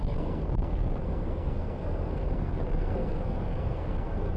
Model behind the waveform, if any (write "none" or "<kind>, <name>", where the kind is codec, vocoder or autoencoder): codec, SNAC